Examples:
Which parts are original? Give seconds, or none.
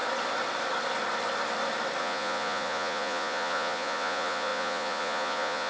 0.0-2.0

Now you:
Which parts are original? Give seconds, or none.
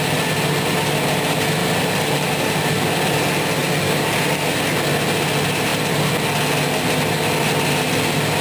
0.0-1.6; 2.6-8.4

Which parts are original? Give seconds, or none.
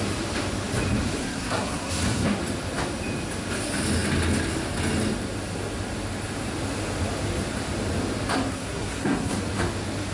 0.0-1.2; 2.4-8.5; 9.4-10.1